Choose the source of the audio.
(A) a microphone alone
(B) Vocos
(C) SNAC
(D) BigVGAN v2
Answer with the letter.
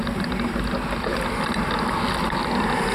A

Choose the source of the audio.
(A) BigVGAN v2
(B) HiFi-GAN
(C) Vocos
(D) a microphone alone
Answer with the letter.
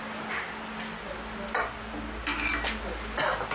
D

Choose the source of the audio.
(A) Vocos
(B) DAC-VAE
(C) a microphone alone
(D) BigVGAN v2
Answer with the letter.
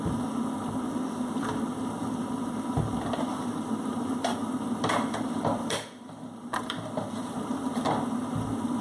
D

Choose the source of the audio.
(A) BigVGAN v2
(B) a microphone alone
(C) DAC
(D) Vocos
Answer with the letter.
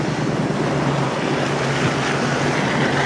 B